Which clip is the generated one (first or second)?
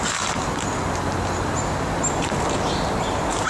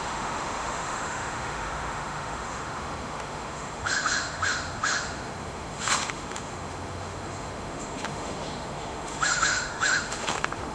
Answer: second